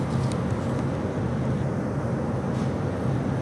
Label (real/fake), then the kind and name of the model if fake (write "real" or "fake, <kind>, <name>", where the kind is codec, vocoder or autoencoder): real